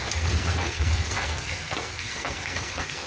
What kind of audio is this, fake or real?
fake